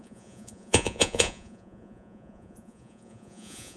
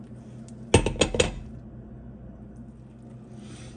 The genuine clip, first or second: second